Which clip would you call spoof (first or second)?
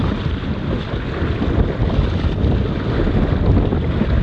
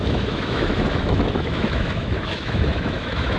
second